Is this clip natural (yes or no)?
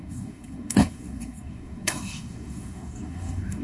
no